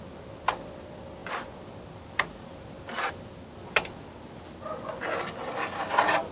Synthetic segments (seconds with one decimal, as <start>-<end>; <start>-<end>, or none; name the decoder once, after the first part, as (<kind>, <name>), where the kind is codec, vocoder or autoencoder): none